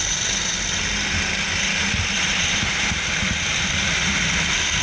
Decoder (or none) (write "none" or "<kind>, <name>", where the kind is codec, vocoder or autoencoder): none